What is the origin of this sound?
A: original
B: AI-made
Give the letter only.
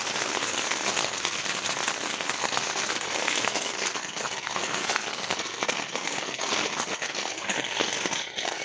B